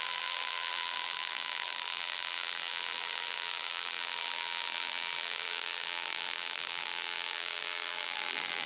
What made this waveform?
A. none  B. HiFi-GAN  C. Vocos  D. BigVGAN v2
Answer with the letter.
D